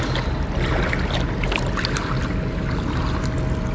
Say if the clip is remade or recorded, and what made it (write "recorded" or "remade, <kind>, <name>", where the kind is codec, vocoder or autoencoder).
recorded